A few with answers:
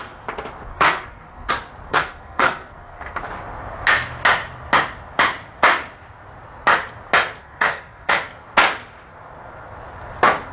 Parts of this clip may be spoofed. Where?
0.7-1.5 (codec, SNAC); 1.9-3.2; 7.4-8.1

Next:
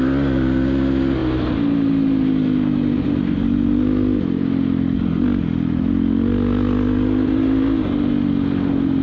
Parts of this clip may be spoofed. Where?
none

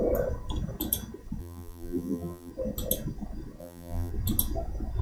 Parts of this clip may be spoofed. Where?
1.4-2.5 (vocoder, BigVGAN v2); 3.6-4.1

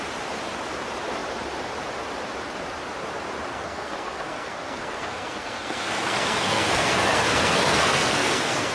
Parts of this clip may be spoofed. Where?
3.5-8.7 (codec, SNAC)

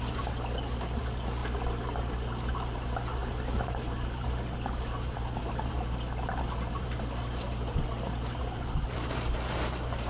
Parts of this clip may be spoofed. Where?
3.2-5.5 (vocoder, BigVGAN v2); 8.4-10.1

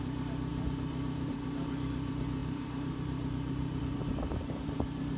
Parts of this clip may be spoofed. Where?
0.5-1.3 (vocoder, BigVGAN v2); 2.4-3.8